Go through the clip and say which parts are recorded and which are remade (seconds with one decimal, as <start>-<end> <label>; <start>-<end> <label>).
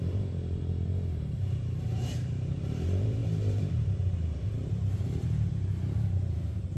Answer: 0.0-6.8 remade